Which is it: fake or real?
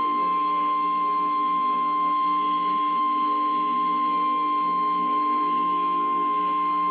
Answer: fake